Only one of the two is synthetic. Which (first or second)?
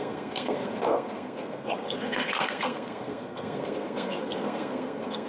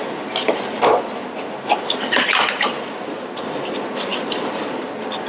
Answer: first